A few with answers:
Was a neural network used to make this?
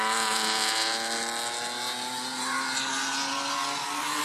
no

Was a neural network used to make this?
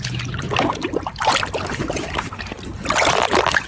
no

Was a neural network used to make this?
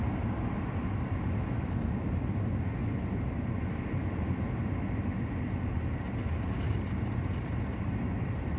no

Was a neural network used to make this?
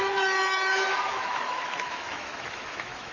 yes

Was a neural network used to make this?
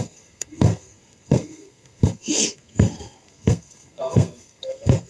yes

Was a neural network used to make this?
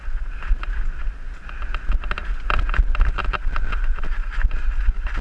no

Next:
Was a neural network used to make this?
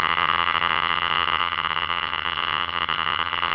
yes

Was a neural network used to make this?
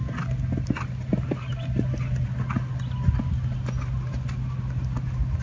no